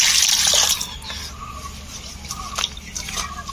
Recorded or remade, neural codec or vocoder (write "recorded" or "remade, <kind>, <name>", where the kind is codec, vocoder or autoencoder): recorded